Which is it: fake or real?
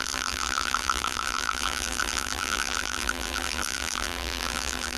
fake